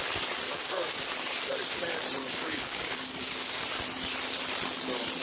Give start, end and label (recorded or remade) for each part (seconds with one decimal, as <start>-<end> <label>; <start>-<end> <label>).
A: 0.0-0.5 recorded; 0.5-1.1 remade; 1.1-2.2 recorded; 2.2-3.6 remade; 3.6-5.2 recorded